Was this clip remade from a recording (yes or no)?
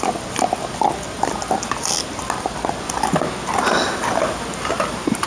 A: no